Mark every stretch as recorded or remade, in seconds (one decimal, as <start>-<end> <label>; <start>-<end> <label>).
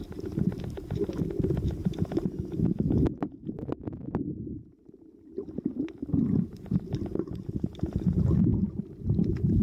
0.0-0.6 remade; 0.6-1.8 recorded; 1.8-5.5 remade; 5.5-6.0 recorded; 6.0-9.6 remade